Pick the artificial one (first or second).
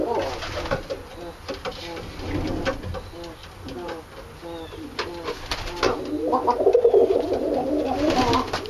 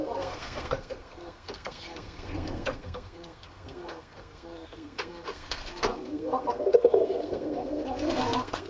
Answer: second